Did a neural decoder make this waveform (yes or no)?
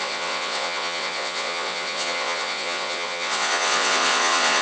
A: yes